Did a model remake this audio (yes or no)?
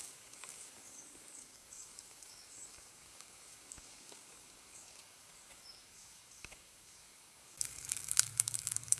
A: yes